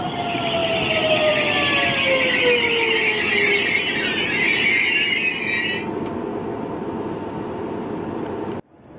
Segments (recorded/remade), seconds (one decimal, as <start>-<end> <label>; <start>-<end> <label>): 0.0-9.0 recorded